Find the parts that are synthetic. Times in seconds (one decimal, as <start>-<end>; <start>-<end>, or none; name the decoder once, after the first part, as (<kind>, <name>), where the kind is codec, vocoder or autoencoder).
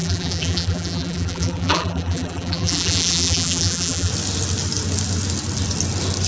0.0-4.1 (vocoder, BigVGAN v2)